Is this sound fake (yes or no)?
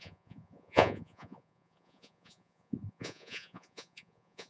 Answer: yes